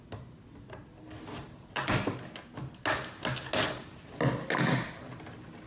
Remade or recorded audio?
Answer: recorded